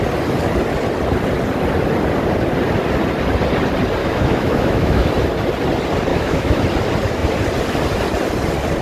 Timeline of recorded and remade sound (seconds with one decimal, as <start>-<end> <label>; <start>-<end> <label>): 0.0-4.0 recorded; 4.0-5.1 remade; 5.1-6.1 recorded; 6.1-6.6 remade; 6.6-8.8 recorded